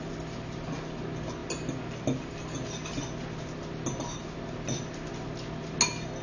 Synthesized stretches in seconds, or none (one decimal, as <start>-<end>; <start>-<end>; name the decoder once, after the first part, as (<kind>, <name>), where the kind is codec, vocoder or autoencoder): none